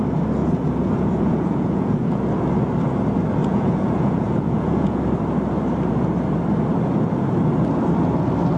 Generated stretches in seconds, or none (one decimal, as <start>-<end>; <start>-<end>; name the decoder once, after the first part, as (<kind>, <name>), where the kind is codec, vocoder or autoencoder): 0.4-2.2 (vocoder, Vocos); 3.4-5.0